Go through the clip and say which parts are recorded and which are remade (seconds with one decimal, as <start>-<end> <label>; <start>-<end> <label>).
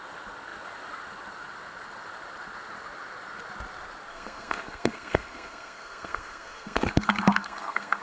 0.0-4.1 recorded; 4.1-8.0 remade